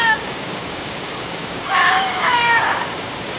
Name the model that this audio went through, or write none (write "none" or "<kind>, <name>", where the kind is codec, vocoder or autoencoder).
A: codec, DAC